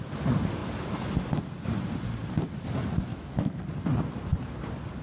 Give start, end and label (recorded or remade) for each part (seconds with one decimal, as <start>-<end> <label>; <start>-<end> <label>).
0.0-3.1 recorded; 3.1-3.6 remade; 3.6-5.0 recorded